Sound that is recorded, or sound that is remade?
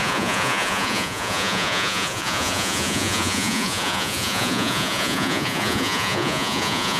remade